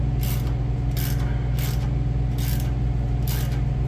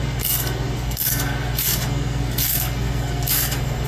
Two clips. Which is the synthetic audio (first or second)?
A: second